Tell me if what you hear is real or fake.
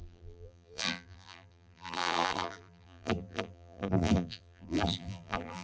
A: fake